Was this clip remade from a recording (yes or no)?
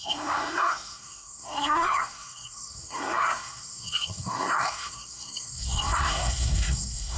yes